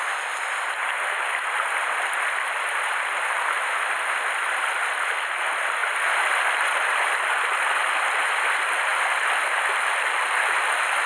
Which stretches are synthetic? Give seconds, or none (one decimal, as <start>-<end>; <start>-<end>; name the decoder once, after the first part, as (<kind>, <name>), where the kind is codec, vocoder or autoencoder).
5.8-7.7 (vocoder, BigVGAN v2); 8.9-10.7